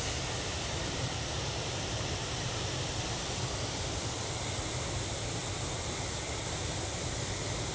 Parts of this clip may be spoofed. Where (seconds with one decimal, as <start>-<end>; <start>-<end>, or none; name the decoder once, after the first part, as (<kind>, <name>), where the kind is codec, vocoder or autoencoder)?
0.8-2.4 (vocoder, BigVGAN v2); 5.4-6.4